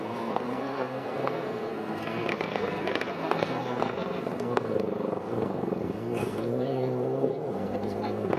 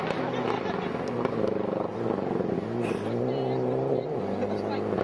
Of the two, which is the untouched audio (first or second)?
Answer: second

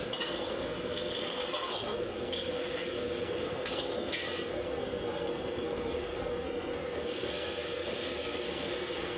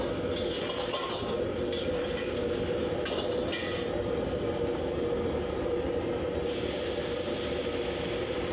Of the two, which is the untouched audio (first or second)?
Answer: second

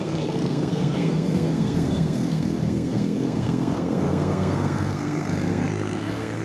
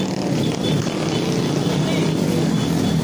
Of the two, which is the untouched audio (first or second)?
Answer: second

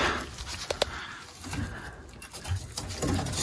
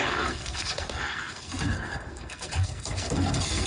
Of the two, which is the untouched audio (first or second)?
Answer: first